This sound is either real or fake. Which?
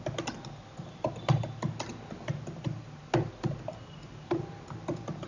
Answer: real